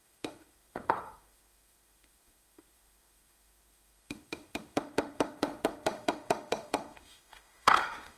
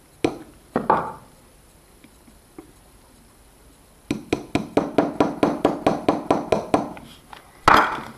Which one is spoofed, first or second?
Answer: first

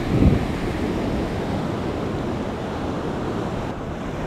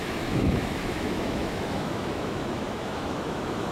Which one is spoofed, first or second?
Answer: second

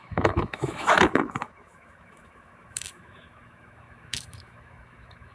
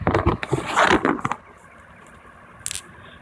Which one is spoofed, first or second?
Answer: first